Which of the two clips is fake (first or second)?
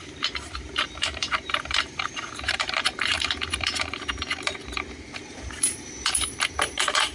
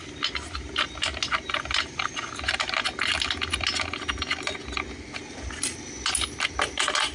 first